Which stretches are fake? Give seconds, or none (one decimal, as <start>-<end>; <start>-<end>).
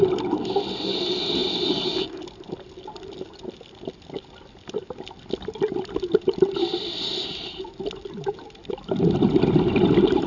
none